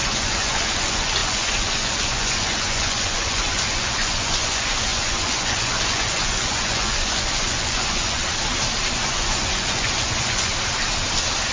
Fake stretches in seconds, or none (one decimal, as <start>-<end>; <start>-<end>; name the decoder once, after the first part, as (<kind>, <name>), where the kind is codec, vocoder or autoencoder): 0.0-8.2 (vocoder, Vocos); 8.9-10.5